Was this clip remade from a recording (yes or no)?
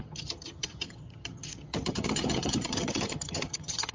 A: yes